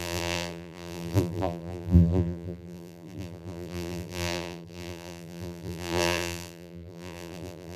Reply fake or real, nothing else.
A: fake